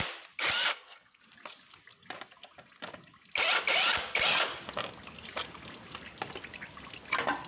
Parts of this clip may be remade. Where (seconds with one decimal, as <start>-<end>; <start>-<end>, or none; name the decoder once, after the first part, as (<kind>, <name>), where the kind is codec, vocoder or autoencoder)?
0.7-1.2 (codec, SNAC)